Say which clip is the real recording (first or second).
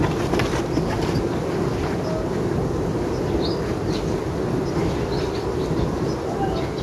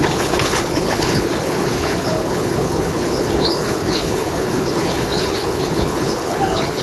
first